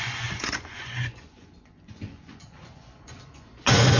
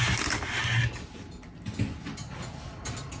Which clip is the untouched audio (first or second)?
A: second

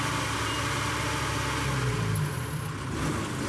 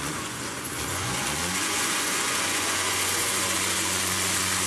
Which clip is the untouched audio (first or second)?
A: first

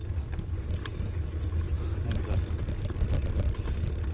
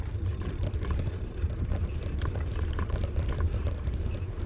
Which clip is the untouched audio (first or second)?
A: first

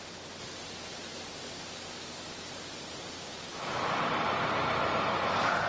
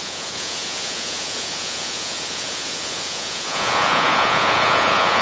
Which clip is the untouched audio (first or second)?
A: first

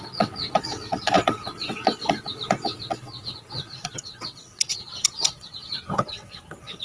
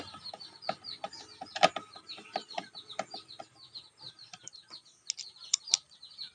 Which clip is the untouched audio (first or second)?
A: second